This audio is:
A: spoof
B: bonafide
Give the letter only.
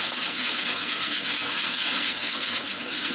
A